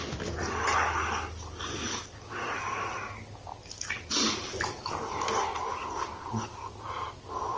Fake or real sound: real